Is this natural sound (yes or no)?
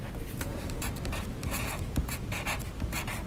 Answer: yes